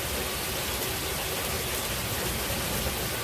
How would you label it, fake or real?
real